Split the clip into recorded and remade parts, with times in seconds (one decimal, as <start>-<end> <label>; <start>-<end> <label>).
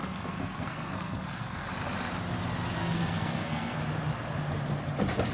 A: 0.0-1.7 remade; 1.7-2.8 recorded; 2.8-3.8 remade; 3.8-5.3 recorded